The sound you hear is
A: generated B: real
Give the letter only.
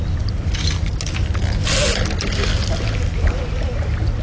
B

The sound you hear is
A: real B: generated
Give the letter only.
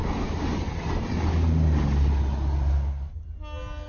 A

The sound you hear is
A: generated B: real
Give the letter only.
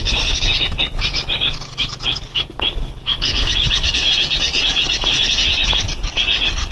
A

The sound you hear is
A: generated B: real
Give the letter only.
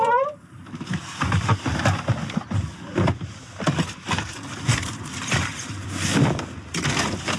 A